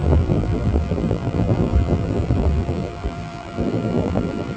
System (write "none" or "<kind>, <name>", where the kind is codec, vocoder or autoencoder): vocoder, BigVGAN v2